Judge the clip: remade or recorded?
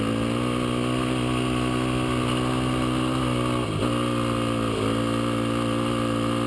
recorded